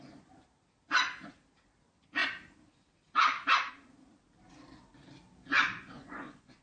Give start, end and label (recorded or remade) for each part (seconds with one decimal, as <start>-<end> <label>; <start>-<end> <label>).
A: 0.0-5.6 recorded; 5.6-6.6 remade